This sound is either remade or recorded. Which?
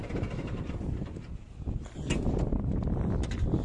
recorded